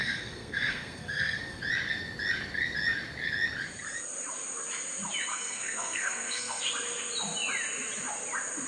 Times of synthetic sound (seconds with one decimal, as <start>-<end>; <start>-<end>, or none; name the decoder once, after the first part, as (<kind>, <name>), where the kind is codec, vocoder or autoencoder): 0.0-1.6 (codec, SNAC); 5.3-6.6